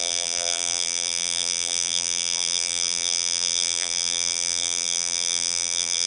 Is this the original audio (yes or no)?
no